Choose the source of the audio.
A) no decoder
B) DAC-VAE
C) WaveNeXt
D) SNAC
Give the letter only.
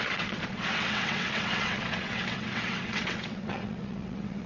C